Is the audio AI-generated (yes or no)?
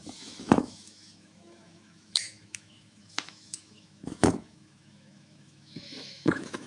yes